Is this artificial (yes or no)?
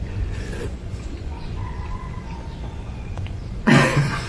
yes